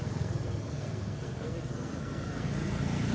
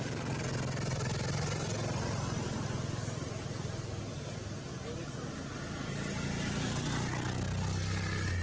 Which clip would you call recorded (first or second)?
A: second